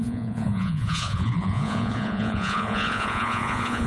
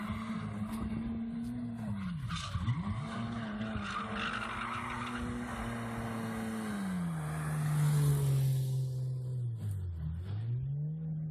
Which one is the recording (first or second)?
second